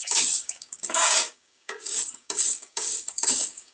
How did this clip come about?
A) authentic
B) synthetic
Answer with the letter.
B